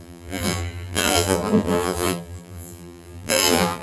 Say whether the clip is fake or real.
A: fake